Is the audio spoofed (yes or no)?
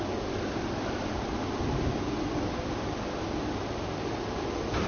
no